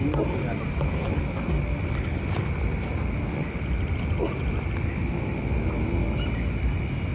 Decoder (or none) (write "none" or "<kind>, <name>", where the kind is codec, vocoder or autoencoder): none